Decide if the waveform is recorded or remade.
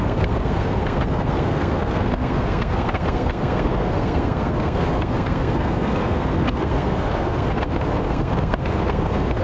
remade